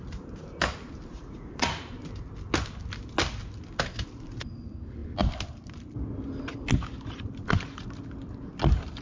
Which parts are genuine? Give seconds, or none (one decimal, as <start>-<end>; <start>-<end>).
0.0-1.1; 1.9-9.0